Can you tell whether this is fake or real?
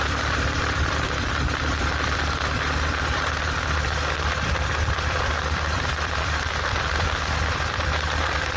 fake